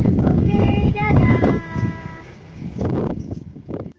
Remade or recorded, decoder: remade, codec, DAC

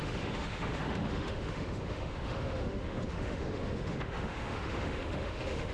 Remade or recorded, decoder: remade, autoencoder, DAC-VAE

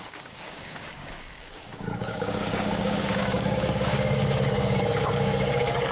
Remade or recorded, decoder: remade, codec, DAC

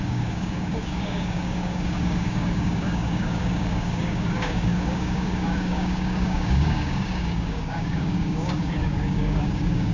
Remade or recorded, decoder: remade, codec, DAC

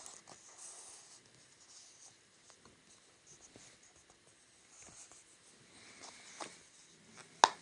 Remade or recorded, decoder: recorded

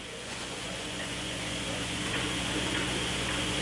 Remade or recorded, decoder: remade, vocoder, Vocos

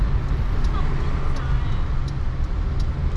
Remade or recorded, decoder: recorded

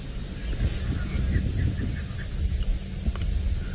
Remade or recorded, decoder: recorded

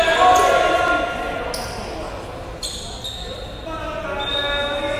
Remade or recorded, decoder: recorded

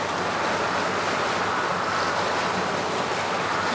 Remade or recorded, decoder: recorded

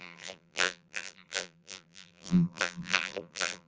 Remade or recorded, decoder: remade, vocoder, BigVGAN v2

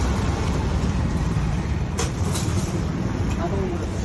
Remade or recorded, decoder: remade, vocoder, BigVGAN v2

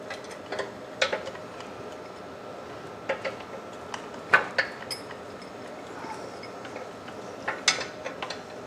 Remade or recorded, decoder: recorded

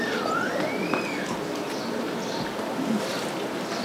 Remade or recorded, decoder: recorded